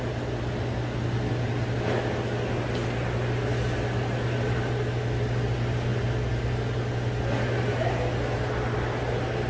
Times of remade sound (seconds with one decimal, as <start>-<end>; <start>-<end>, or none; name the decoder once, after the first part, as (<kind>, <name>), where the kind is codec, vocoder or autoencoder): none